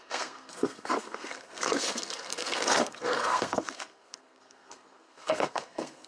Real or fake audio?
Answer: fake